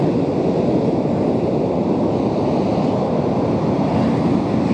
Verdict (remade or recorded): recorded